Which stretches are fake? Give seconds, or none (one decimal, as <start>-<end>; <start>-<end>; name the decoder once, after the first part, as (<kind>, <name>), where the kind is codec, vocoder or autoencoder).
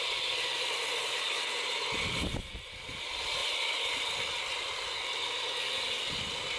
none